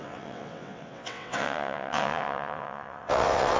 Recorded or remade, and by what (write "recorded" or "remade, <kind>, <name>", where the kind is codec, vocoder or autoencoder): remade, vocoder, WaveNeXt